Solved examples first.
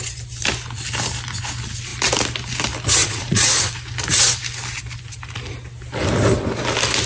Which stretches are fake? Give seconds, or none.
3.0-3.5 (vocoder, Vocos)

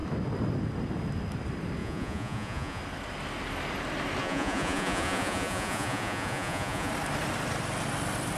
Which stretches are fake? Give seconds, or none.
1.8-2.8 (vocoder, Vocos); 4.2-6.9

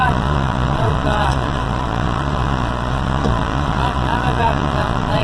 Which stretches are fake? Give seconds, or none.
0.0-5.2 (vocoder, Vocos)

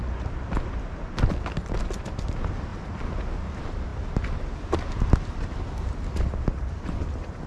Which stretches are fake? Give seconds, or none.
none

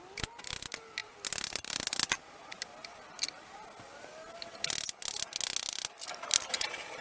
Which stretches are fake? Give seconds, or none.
none

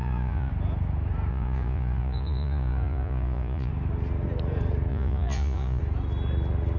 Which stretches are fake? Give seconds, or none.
0.0-0.5 (vocoder, Vocos); 1.3-3.7; 4.9-5.8

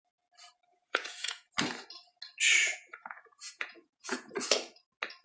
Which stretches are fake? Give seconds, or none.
0.7-1.5 (vocoder, Vocos); 2.6-4.3